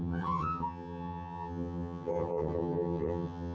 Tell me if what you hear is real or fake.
fake